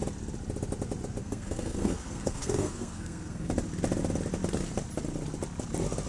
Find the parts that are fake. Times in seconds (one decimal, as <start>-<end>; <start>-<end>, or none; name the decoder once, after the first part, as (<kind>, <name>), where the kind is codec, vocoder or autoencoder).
1.2-3.5 (codec, SNAC)